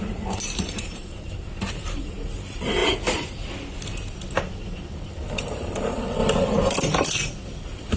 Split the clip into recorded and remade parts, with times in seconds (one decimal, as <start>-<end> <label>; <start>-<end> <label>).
0.0-2.8 remade; 2.8-5.3 recorded; 5.3-8.0 remade